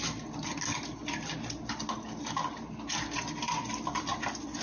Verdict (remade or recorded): recorded